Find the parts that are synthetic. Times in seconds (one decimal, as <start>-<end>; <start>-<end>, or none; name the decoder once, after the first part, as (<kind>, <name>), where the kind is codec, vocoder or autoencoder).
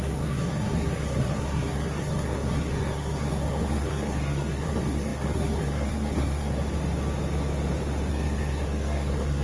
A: 0.0-6.6 (codec, SNAC); 8.1-9.4